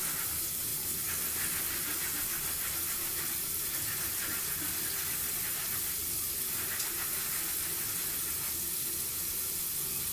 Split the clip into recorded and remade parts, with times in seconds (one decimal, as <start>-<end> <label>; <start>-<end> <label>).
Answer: 0.0-10.1 recorded

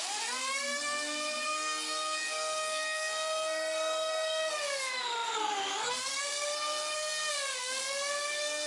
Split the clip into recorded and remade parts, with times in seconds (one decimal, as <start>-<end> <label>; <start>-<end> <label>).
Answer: 0.0-8.7 remade

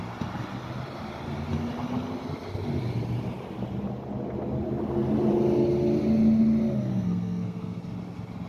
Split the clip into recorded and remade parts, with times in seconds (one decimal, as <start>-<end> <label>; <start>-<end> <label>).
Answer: 0.0-6.9 recorded; 6.9-7.8 remade; 7.8-8.5 recorded